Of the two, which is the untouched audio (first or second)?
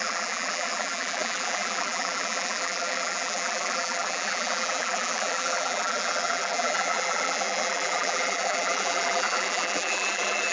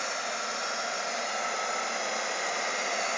second